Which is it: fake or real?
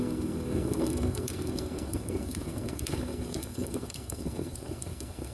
fake